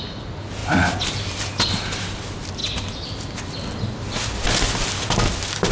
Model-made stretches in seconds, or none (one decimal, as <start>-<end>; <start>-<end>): none

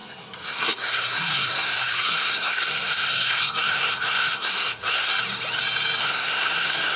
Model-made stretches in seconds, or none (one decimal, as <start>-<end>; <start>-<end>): 0.0-5.1; 6.0-7.0

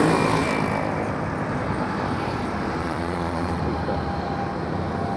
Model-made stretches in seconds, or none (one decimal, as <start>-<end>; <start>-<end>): 2.8-3.6

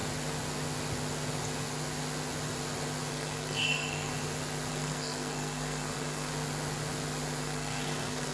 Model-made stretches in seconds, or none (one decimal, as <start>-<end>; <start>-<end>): 3.1-4.1; 4.7-6.3; 7.4-8.3